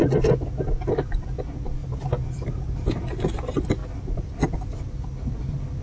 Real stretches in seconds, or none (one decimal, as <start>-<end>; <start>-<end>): 0.0-1.8; 3.4-3.8; 4.3-5.8